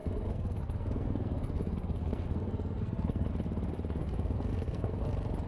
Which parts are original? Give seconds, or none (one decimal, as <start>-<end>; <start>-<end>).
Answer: 3.3-4.0; 5.0-5.5